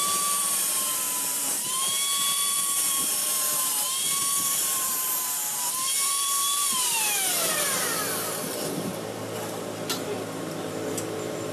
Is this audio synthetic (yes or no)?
yes